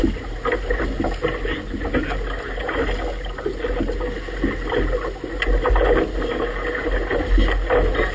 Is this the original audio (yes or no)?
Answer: yes